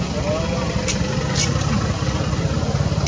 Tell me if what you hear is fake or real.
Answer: real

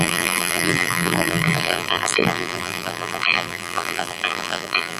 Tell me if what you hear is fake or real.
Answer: fake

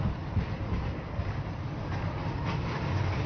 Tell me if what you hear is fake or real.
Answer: real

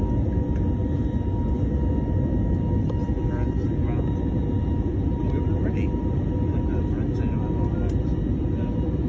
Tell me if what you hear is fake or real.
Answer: real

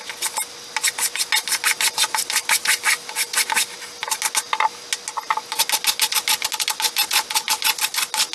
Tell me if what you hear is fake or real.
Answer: real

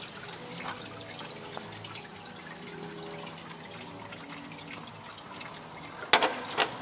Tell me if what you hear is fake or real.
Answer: real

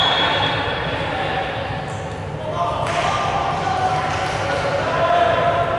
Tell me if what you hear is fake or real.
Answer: real